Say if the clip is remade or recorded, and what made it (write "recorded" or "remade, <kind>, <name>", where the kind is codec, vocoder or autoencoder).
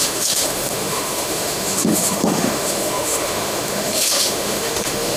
remade, autoencoder, DAC-VAE